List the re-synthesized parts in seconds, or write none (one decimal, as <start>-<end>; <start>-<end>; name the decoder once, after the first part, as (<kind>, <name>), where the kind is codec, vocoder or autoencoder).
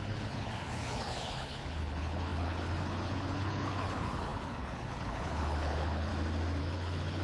0.0-6.1 (codec, HILCodec); 6.6-7.2